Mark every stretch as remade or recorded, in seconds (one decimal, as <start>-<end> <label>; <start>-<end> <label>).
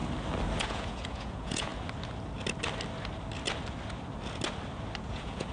0.0-0.6 recorded; 0.6-1.7 remade; 1.7-5.0 recorded; 5.0-5.5 remade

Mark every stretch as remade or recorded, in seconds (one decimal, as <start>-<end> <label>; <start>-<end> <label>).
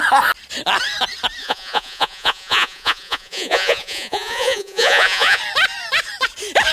0.0-1.4 recorded; 1.4-5.4 remade; 5.4-6.7 recorded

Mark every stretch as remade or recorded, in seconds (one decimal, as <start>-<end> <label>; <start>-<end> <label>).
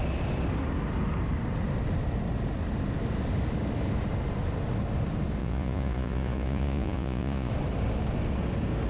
0.0-5.4 recorded; 5.4-7.5 remade; 7.5-8.9 recorded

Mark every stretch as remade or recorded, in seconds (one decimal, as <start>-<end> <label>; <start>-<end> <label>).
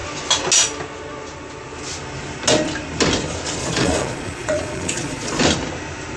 0.0-3.6 recorded; 3.6-5.4 remade; 5.4-6.2 recorded